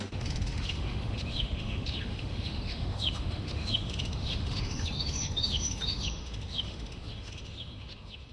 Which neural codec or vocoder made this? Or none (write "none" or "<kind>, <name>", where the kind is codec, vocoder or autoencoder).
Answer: autoencoder, DAC-VAE